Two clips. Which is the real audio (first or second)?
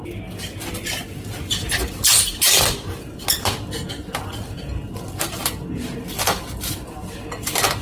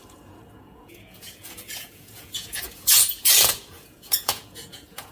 first